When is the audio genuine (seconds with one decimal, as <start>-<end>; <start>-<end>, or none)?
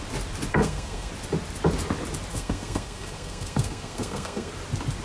0.0-0.5; 1.1-2.3; 4.5-5.0